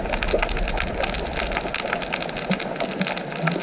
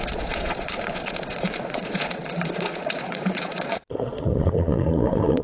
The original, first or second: first